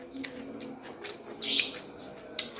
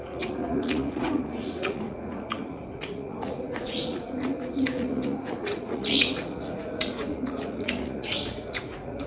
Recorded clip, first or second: first